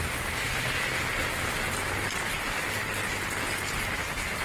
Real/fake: real